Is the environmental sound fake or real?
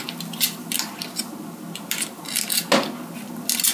real